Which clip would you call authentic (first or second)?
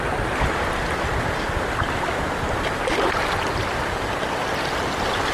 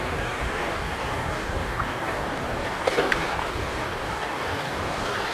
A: first